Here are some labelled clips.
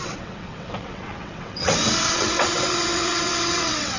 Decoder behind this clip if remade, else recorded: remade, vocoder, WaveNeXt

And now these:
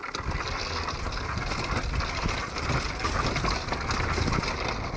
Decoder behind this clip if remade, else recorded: recorded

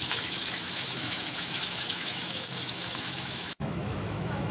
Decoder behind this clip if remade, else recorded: remade, autoencoder, DAC-VAE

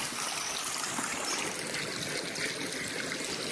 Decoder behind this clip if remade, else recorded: recorded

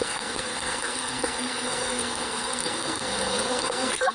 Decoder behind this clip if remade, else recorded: remade, codec, SNAC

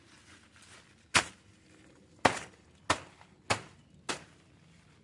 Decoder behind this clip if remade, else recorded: recorded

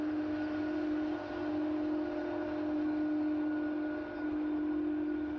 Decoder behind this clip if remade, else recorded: recorded